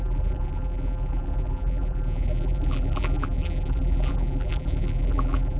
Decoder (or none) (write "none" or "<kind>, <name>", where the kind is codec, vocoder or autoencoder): vocoder, BigVGAN v2